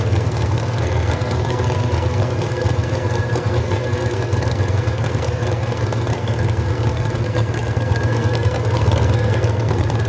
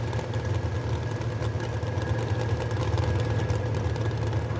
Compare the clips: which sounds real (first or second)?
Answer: second